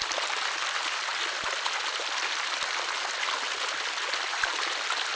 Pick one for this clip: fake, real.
real